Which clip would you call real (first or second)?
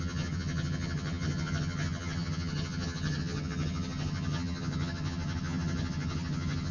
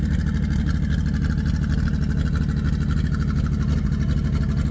second